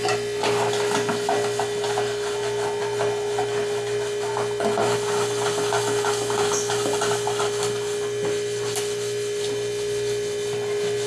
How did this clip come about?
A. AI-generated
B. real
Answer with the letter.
B